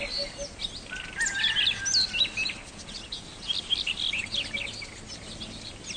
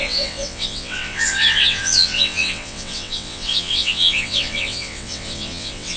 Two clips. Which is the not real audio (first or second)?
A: second